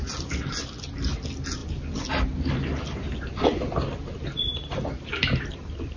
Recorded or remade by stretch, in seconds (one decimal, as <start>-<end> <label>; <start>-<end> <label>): 0.0-6.0 recorded